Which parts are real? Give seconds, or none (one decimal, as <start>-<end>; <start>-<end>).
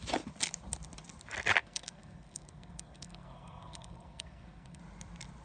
0.0-1.6; 4.8-5.4